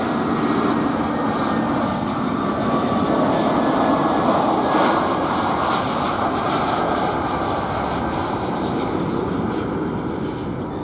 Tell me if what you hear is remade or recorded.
recorded